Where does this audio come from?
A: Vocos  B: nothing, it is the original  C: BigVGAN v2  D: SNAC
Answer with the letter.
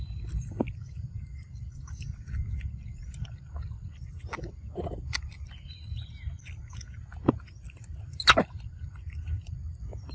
B